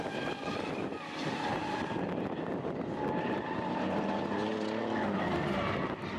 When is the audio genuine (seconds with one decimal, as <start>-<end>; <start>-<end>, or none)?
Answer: 4.4-6.2

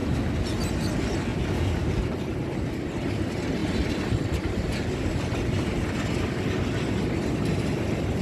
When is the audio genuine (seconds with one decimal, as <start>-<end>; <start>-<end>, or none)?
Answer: 0.0-8.2

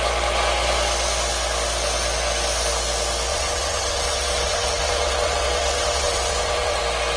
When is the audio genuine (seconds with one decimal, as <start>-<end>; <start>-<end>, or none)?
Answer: 0.0-3.3; 6.8-7.2

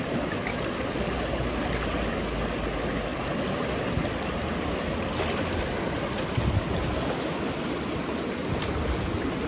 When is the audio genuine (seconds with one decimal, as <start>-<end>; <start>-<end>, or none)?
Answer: 0.0-9.5

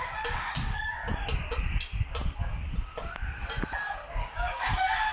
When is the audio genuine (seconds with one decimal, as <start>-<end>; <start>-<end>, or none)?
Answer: 1.0-4.1

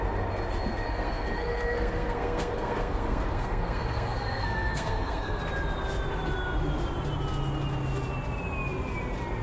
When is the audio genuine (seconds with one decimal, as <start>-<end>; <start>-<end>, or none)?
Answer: 0.0-0.9; 5.4-9.4

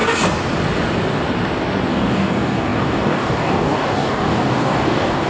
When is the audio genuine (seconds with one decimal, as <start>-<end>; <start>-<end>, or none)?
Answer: 0.0-1.9

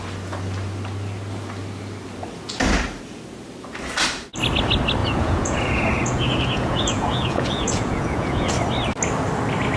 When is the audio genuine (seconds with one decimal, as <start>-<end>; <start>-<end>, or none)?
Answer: 0.0-5.0; 8.5-9.8